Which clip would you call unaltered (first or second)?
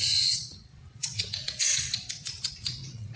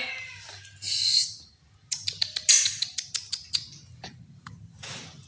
second